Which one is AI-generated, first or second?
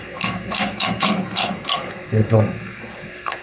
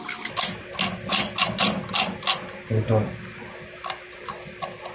first